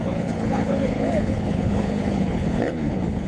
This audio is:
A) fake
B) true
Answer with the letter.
A